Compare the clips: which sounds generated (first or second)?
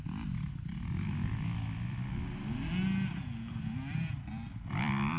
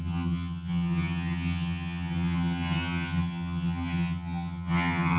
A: second